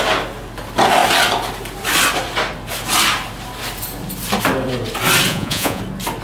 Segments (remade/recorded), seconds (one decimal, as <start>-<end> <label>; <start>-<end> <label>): 0.0-5.3 recorded; 5.3-5.8 remade; 5.8-6.2 recorded